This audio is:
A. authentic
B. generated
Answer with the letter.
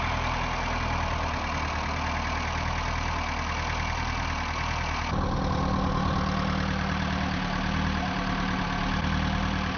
A